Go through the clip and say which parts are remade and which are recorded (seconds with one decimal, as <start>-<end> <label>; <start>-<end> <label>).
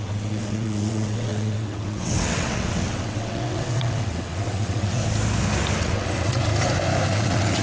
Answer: 0.0-5.0 remade; 5.0-5.8 recorded; 5.8-6.5 remade; 6.5-7.1 recorded; 7.1-7.6 remade